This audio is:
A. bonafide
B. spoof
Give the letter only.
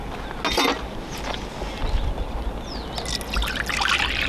A